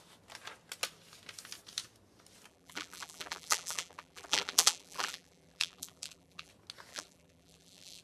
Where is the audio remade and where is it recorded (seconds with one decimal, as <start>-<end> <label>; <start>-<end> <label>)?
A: 0.0-2.5 recorded; 2.5-6.5 remade; 6.5-6.9 recorded; 6.9-8.0 remade